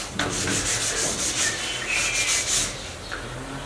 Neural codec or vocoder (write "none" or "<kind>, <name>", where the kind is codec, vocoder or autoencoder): none